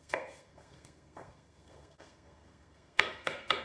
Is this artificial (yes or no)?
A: yes